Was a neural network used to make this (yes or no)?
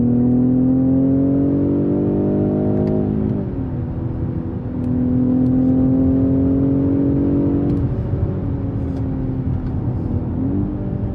no